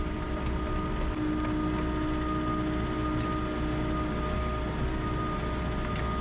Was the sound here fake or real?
real